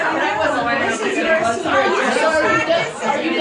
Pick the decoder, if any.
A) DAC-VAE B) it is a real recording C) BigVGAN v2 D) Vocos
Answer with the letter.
C